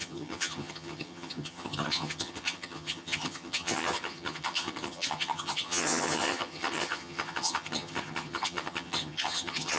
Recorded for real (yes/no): no